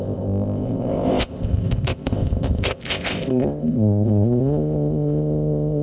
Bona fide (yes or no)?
no